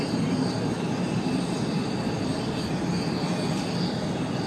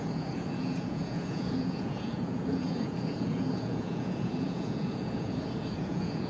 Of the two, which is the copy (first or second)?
second